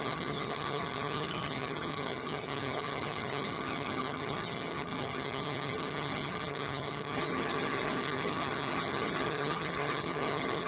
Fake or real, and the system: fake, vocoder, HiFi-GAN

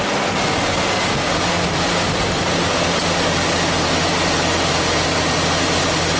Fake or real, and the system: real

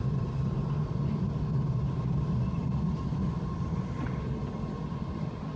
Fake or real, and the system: real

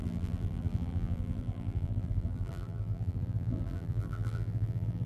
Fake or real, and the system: fake, vocoder, BigVGAN v2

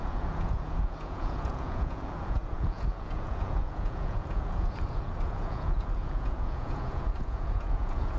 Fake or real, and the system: fake, vocoder, Vocos